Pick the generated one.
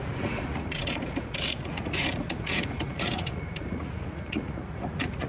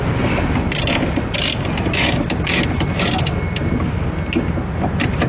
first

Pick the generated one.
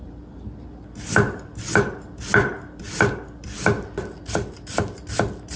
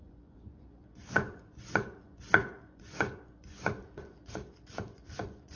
second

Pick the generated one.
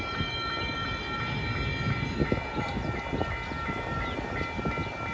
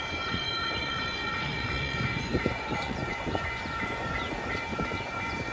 second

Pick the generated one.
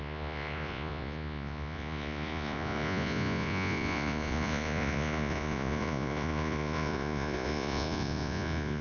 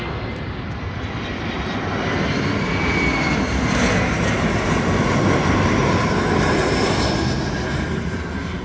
first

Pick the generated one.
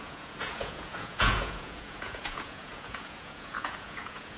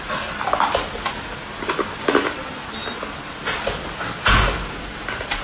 first